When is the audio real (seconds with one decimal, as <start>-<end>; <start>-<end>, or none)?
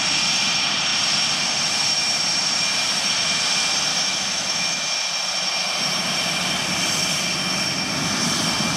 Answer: 0.0-3.9; 4.8-8.8